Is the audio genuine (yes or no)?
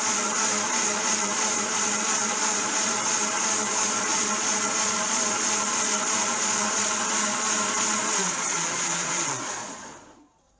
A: no